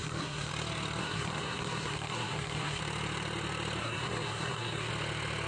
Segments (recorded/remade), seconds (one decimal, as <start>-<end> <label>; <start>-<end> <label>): 0.0-0.5 remade; 0.5-1.0 recorded; 1.0-2.8 remade; 2.8-3.8 recorded; 3.8-4.9 remade; 4.9-5.5 recorded